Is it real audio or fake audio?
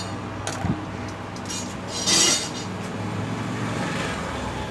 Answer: real